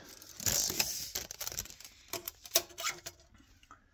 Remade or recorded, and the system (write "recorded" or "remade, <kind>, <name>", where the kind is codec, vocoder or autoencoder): recorded